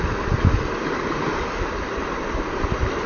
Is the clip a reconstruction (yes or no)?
no